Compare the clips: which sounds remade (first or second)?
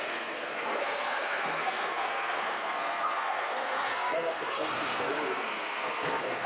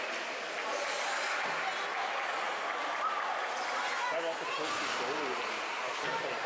first